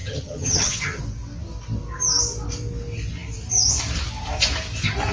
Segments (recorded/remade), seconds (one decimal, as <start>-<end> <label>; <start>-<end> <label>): 0.0-1.0 remade; 1.0-5.1 recorded